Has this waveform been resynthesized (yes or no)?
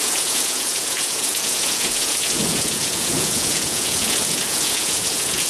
yes